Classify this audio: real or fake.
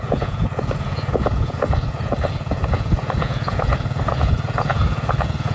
fake